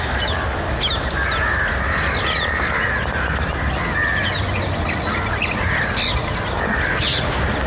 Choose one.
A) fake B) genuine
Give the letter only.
B